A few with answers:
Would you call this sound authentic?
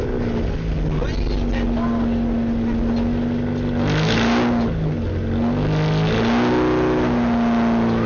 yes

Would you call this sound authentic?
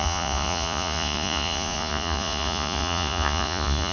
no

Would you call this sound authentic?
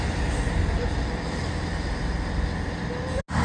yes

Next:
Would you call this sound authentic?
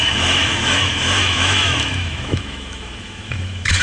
no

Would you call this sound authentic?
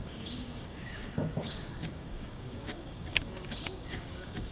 no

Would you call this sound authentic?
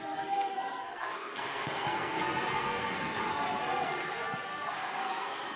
no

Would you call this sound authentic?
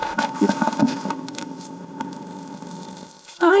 no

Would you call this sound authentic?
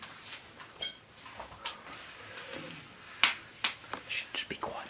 yes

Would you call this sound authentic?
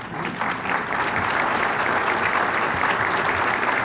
yes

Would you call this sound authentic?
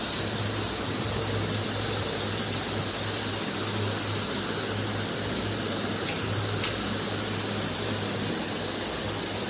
yes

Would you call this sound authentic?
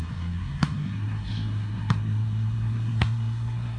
no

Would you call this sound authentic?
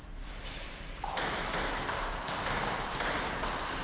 no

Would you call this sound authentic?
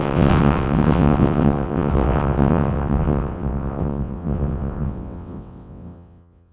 no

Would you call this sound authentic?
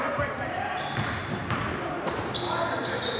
no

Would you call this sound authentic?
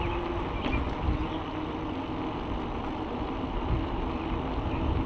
yes